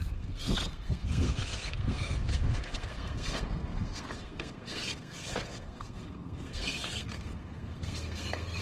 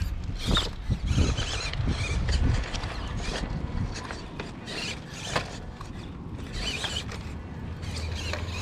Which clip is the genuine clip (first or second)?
second